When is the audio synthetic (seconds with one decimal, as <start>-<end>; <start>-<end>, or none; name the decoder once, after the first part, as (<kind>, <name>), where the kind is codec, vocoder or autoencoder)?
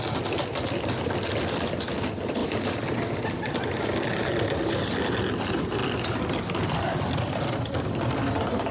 none